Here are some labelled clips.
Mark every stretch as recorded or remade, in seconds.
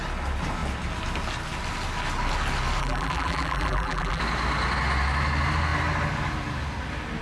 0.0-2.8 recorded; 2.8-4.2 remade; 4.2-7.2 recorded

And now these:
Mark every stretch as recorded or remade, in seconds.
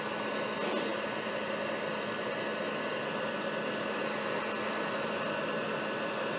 0.0-6.4 recorded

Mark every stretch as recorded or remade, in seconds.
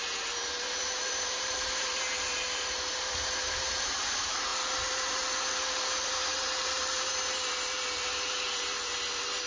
0.0-9.5 remade